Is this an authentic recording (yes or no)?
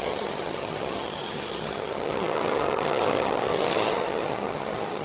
no